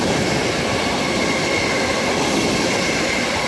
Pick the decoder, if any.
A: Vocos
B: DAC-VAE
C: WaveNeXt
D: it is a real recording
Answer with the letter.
D